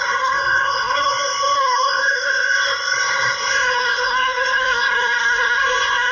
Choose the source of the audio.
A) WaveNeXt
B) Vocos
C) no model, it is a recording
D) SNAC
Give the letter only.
D